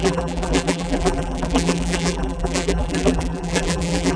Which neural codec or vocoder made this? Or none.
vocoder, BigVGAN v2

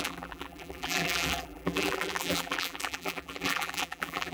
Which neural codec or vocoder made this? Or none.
vocoder, BigVGAN v2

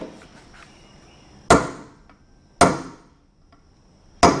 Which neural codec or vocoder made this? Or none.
none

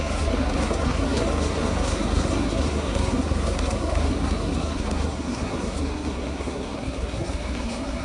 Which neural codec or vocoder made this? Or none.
codec, SNAC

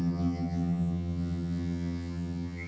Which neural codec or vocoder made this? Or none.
vocoder, HiFi-GAN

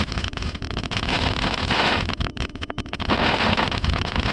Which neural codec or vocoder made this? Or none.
autoencoder, DAC-VAE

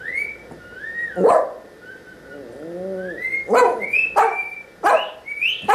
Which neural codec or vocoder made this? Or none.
none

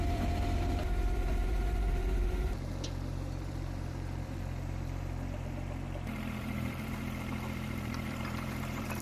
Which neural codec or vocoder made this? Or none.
vocoder, BigVGAN v2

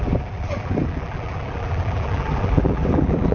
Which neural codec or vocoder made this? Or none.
vocoder, BigVGAN v2